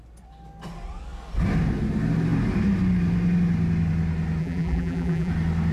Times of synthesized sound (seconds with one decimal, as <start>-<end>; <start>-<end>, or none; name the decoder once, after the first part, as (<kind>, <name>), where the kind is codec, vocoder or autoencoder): 4.4-5.3 (vocoder, BigVGAN v2)